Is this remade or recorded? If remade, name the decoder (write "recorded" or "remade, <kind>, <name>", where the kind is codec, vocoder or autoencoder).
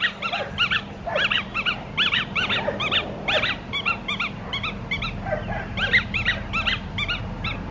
recorded